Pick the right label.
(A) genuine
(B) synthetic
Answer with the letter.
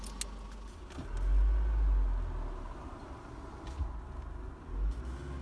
A